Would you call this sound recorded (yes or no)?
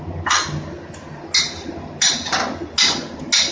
yes